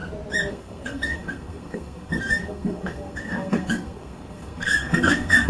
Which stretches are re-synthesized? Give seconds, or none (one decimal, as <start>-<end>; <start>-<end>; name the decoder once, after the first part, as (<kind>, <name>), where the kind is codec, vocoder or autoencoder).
0.5-5.5 (codec, SNAC)